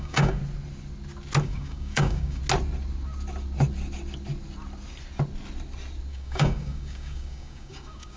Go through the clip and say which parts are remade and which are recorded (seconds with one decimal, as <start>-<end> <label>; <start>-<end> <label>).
0.0-0.4 remade; 0.4-1.4 recorded; 1.4-2.4 remade; 2.4-6.1 recorded; 6.1-8.2 remade